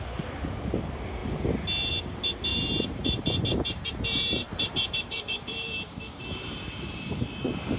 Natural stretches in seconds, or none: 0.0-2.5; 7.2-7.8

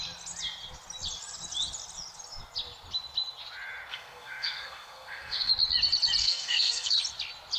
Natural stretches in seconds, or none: 0.0-3.9; 5.5-6.2; 7.0-7.6

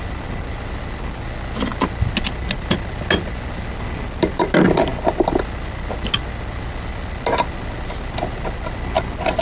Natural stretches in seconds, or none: 0.0-9.4

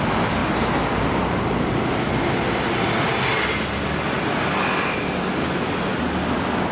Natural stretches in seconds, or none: 0.0-6.7

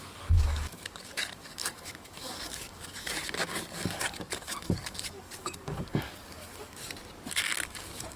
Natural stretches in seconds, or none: 6.8-7.3

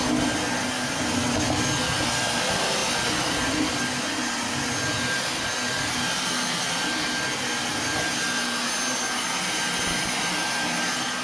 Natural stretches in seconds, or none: 0.0-11.2

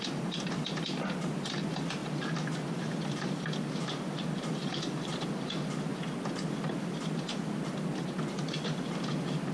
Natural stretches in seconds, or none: 0.0-2.0; 5.2-9.5